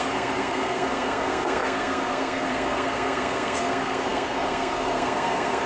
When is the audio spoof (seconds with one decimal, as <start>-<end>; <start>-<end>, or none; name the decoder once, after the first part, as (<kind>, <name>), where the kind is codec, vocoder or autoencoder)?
0.0-5.7 (codec, SNAC)